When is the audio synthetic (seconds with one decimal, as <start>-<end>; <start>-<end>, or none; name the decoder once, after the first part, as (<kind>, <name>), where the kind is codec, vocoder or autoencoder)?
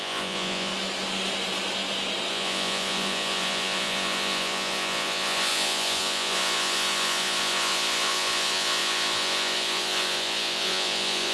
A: 0.0-0.7 (vocoder, Vocos); 2.3-11.3